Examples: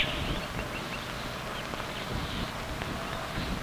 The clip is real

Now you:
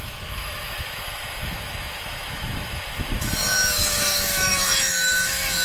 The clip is fake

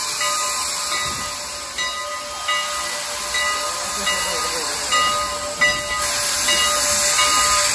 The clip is real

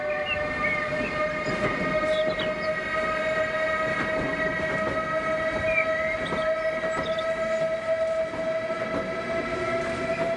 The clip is real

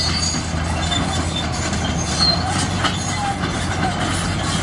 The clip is real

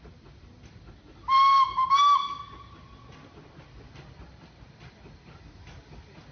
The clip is real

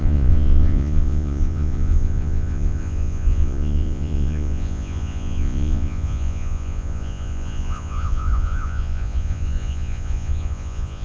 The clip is fake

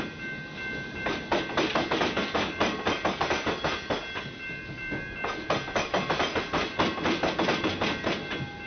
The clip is real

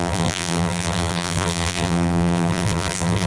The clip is fake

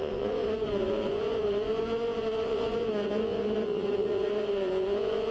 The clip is fake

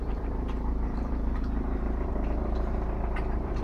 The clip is fake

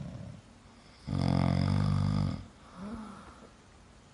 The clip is real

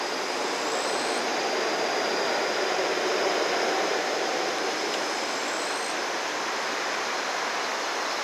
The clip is real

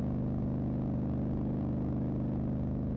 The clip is real